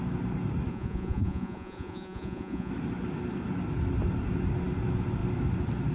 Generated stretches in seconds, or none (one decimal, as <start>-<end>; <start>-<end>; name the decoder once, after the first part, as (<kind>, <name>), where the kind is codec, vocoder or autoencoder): 0.7-2.7 (vocoder, Vocos)